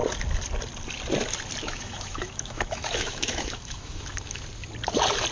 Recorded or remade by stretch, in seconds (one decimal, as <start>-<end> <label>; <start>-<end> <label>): 0.0-1.6 recorded; 1.6-4.4 remade; 4.4-5.3 recorded